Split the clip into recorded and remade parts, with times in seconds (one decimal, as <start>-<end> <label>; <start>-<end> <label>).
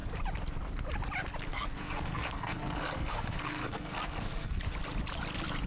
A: 0.0-1.5 recorded; 1.5-4.6 remade; 4.6-5.7 recorded